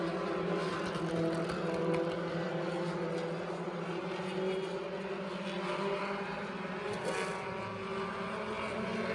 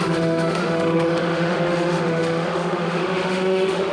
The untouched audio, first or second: first